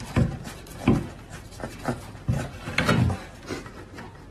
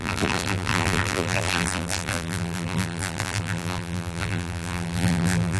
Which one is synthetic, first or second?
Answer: second